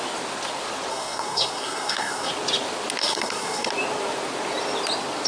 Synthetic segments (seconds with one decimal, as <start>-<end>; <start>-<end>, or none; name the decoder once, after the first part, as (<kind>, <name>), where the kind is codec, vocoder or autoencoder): 0.9-2.3 (codec, SNAC); 3.0-3.7